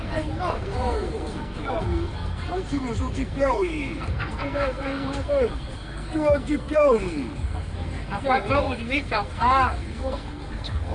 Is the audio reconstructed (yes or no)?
yes